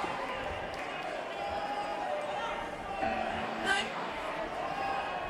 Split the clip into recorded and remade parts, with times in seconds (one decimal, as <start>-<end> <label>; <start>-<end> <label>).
0.0-3.3 recorded; 3.3-4.3 remade; 4.3-5.3 recorded